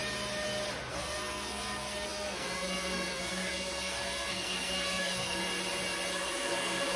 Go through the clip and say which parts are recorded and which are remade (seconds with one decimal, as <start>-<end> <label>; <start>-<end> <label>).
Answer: 0.0-0.9 recorded; 0.9-5.4 remade; 5.4-6.1 recorded; 6.1-7.0 remade